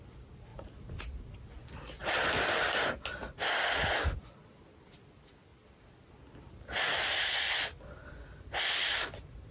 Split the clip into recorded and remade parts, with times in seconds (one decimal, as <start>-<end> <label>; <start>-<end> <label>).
0.0-0.5 recorded; 0.5-1.0 remade; 1.0-9.5 recorded